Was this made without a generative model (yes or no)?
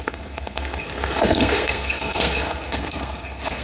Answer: no